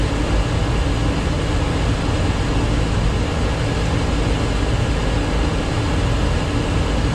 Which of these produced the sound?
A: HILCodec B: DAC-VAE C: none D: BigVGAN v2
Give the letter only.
C